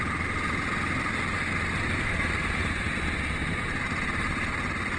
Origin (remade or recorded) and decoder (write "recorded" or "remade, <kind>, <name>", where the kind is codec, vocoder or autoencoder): recorded